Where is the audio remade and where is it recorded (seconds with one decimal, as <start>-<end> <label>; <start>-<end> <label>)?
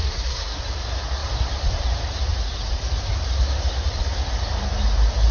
0.0-0.6 remade; 0.6-5.3 recorded